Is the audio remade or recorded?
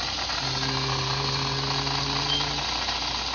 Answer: recorded